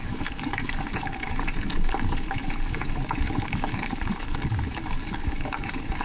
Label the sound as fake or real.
fake